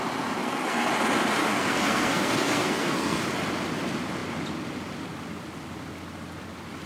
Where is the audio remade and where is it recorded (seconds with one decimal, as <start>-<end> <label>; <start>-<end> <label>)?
0.0-0.4 recorded; 0.4-0.9 remade; 0.9-1.4 recorded; 1.4-3.2 remade; 3.2-6.9 recorded